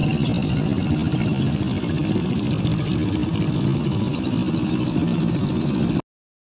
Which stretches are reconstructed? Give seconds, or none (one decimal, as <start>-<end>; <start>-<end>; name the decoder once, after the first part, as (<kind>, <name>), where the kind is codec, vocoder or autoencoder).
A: none